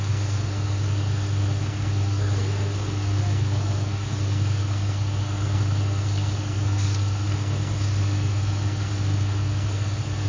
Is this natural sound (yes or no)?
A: no